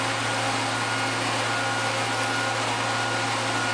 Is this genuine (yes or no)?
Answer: yes